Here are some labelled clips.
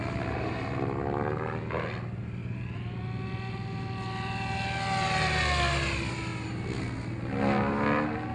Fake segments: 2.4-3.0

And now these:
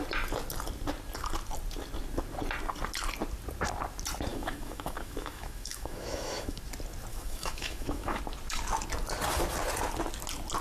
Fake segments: 4.3-6.6; 7.1-8.2